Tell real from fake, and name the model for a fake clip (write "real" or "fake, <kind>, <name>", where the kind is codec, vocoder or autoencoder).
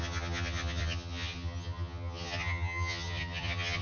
fake, vocoder, HiFi-GAN